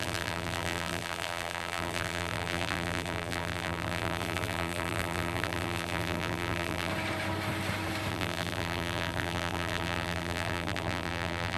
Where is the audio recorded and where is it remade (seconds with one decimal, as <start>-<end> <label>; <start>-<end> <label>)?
0.0-6.9 remade; 6.9-8.1 recorded; 8.1-11.6 remade